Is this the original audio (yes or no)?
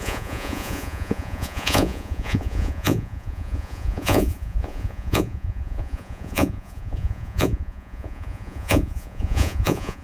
no